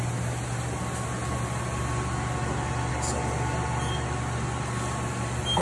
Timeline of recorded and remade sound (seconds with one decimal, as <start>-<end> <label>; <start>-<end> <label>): 0.0-5.6 recorded